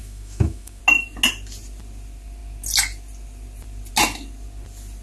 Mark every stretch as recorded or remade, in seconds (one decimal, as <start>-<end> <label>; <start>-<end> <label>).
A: 0.0-0.8 remade; 0.8-5.0 recorded